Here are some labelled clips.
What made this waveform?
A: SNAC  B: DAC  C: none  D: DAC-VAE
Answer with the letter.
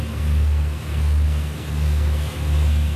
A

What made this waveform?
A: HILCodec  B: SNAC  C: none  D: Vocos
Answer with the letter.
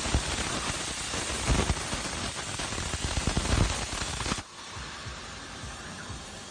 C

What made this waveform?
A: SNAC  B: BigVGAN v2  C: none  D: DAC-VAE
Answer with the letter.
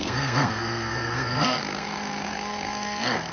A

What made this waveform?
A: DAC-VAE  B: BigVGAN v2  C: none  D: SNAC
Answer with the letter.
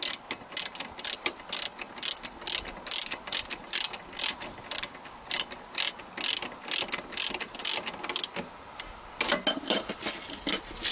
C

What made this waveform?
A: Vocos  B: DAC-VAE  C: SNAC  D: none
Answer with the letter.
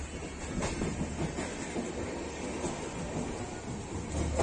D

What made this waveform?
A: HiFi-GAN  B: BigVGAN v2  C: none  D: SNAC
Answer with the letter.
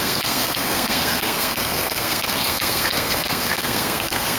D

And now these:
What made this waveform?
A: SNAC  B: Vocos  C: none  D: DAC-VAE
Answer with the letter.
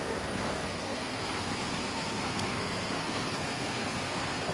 A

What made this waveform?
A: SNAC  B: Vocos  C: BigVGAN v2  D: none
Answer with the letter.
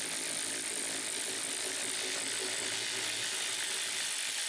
D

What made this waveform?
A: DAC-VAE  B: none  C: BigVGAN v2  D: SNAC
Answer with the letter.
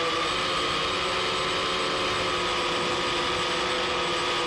B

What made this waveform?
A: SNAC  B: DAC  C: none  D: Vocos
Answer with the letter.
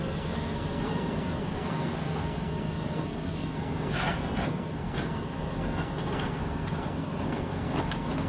A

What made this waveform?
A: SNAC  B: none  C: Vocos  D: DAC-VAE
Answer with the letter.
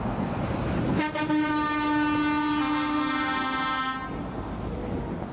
B